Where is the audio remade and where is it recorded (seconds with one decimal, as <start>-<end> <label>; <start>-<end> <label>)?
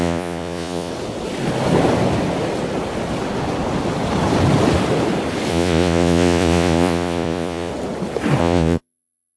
0.0-0.9 remade; 0.9-5.5 recorded; 5.5-7.7 remade; 7.7-8.4 recorded; 8.4-9.4 remade